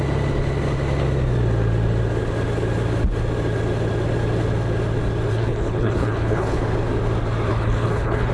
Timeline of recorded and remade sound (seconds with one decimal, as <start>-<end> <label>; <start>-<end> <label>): 0.0-5.3 recorded; 5.3-6.6 remade; 6.6-7.5 recorded; 7.5-8.3 remade